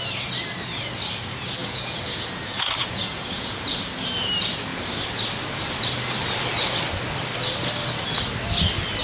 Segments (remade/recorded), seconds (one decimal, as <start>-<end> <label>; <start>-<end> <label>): 0.0-1.6 recorded; 1.6-3.8 remade; 3.8-9.0 recorded